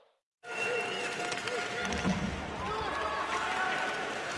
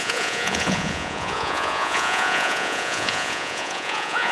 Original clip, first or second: first